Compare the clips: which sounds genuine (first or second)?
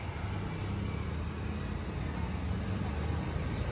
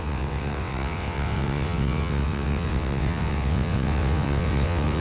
first